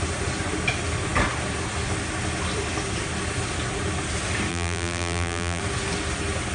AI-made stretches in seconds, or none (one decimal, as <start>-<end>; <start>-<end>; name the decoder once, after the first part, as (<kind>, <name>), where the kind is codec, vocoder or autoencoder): 4.5-5.6 (vocoder, BigVGAN v2)